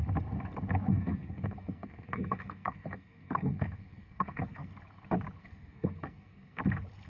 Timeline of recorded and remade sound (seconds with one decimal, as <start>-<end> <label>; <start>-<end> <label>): 0.0-0.9 recorded; 0.9-4.7 remade; 4.7-5.4 recorded; 5.4-6.6 remade; 6.6-7.1 recorded